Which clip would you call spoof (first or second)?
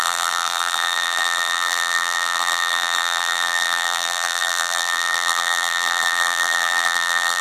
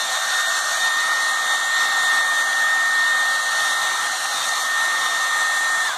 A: first